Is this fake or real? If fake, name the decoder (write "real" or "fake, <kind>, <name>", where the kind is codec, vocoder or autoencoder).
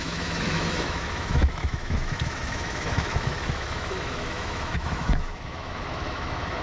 fake, autoencoder, DAC-VAE